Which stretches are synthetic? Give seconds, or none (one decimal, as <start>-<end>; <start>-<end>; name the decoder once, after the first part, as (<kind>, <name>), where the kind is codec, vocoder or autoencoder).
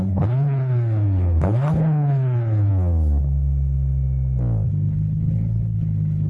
0.0-2.7 (codec, HILCodec); 4.7-6.3